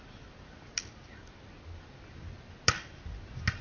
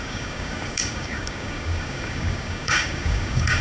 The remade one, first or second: second